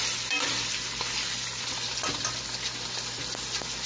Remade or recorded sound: recorded